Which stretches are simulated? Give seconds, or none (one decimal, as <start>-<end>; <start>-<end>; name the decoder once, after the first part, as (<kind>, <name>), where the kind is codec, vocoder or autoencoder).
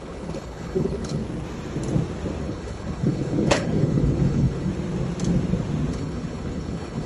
0.0-1.2 (codec, HILCodec); 2.4-4.7; 5.9-7.1